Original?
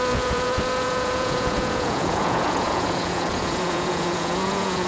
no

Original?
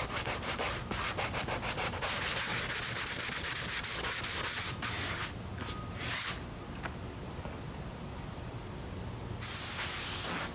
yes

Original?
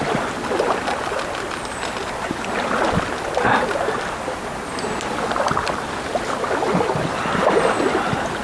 yes